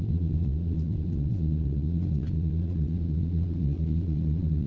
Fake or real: fake